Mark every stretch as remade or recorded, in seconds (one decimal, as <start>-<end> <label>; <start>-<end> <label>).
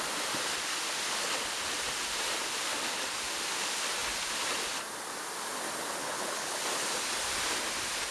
0.0-6.0 recorded; 6.0-6.6 remade; 6.6-8.1 recorded